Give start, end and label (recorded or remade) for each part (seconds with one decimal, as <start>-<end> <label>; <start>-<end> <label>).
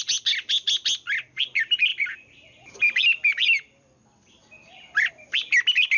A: 0.0-6.0 recorded